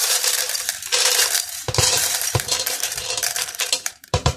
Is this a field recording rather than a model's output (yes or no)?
no